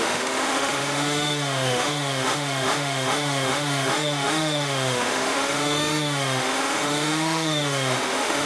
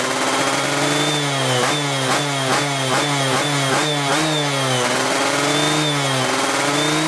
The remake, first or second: first